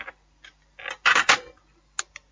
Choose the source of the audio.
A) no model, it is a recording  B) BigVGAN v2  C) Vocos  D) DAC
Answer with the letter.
A